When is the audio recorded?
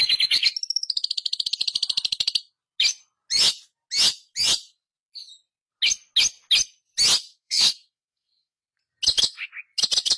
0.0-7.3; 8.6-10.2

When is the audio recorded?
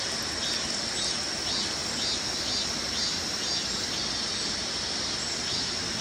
0.0-6.0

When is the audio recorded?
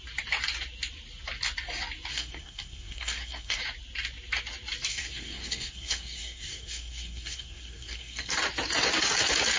0.0-2.1; 3.6-4.9; 8.3-9.6